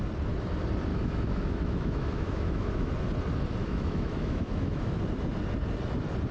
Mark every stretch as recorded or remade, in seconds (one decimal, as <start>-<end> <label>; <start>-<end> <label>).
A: 0.0-0.9 recorded; 0.9-2.9 remade; 2.9-3.6 recorded; 3.6-5.0 remade; 5.0-6.3 recorded